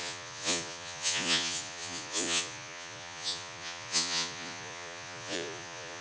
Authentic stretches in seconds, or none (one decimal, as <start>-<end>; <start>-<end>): none